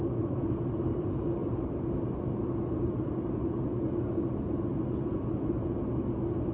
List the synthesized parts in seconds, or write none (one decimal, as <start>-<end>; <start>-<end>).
none